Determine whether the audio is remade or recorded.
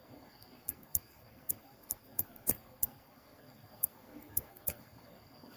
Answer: remade